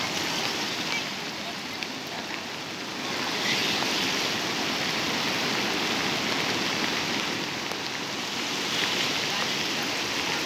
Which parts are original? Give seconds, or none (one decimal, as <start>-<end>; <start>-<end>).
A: 0.0-10.5